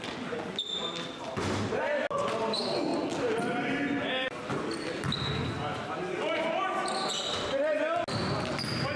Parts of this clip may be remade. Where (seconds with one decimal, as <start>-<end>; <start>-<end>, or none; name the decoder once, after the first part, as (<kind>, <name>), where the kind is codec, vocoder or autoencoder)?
none